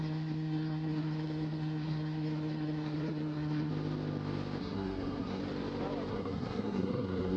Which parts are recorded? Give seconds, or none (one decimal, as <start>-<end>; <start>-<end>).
3.7-4.6; 5.4-6.1